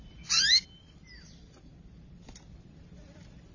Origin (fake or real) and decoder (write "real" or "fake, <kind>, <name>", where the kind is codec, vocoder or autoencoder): fake, vocoder, BigVGAN v2